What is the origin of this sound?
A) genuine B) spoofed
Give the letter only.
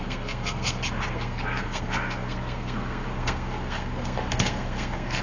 B